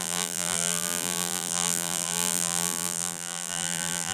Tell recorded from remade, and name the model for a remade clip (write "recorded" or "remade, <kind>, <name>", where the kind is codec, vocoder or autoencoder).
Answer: remade, vocoder, BigVGAN v2